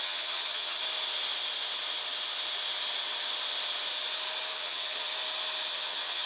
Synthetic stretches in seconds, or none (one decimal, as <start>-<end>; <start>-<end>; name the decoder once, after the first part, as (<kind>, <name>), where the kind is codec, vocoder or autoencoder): 0.0-0.8 (vocoder, HiFi-GAN); 4.6-5.1; 5.7-6.3